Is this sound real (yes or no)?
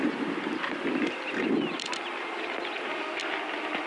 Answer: yes